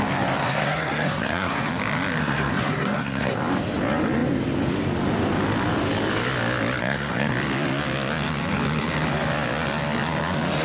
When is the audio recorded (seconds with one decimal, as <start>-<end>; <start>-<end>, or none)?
0.0-0.4; 1.7-2.2; 3.4-6.8; 7.3-10.6